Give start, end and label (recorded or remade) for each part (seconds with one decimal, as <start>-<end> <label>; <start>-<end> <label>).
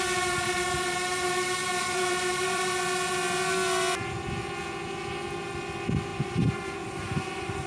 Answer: 0.0-1.6 recorded; 1.6-2.6 remade; 2.6-6.1 recorded; 6.1-7.7 remade